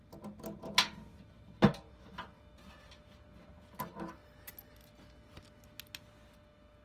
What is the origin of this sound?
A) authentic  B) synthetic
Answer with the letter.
A